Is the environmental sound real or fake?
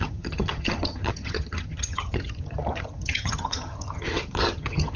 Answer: fake